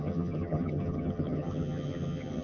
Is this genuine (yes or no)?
no